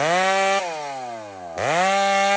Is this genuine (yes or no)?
yes